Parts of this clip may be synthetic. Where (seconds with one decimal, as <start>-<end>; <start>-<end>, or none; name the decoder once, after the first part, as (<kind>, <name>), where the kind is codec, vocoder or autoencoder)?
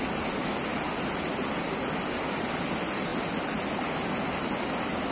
0.7-2.6 (vocoder, BigVGAN v2)